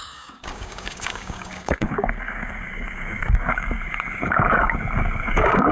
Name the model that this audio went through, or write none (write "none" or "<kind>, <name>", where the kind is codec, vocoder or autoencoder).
codec, DAC